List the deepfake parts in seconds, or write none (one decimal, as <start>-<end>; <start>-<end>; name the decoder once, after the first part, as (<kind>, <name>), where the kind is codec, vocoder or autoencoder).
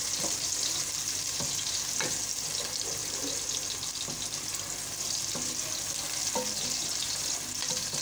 none